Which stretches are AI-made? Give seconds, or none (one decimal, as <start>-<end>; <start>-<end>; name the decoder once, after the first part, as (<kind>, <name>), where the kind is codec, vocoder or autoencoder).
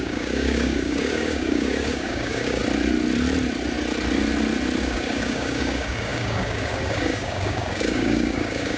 0.0-2.6 (codec, DAC); 4.8-8.8